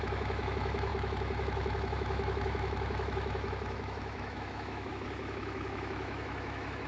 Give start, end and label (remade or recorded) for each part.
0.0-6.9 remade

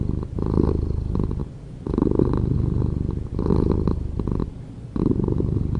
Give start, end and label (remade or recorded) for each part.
0.0-5.8 recorded

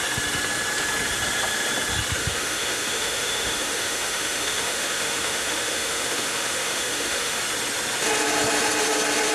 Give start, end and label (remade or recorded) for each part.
0.0-2.2 recorded; 2.2-7.4 remade; 7.4-9.3 recorded

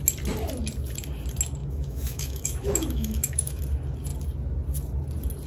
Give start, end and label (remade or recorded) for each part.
0.0-1.6 recorded; 1.6-3.6 remade; 3.6-5.5 recorded

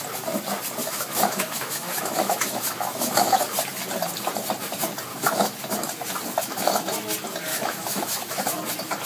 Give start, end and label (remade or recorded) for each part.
0.0-0.8 recorded; 0.8-3.4 remade; 3.4-5.1 recorded; 5.1-5.6 remade; 5.6-7.5 recorded; 7.5-8.4 remade; 8.4-9.1 recorded

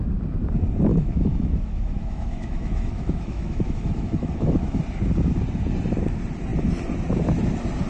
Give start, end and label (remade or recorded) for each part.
0.0-0.9 recorded; 0.9-4.8 remade; 4.8-7.9 recorded

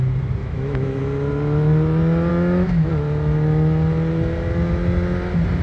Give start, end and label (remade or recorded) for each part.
0.0-0.4 recorded; 0.4-1.0 remade; 1.0-2.3 recorded; 2.3-2.9 remade; 2.9-5.6 recorded